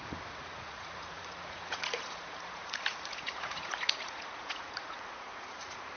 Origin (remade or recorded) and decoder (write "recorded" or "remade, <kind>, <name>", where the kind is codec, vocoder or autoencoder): remade, vocoder, Vocos